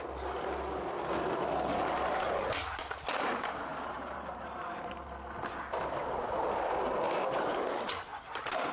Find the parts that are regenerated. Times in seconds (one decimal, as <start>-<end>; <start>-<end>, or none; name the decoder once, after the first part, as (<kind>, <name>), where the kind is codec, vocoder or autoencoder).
3.7-5.0 (vocoder, BigVGAN v2); 8.1-8.7